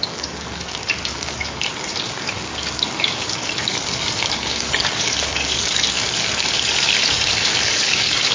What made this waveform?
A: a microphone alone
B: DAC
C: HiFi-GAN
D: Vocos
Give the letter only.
B